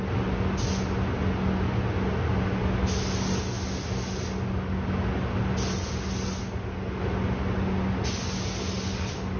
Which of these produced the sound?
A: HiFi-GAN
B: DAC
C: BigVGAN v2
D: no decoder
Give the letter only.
D